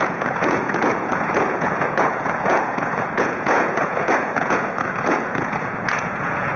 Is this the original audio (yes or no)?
no